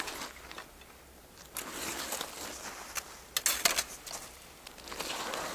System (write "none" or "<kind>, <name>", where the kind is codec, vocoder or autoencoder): none